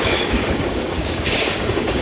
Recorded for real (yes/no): no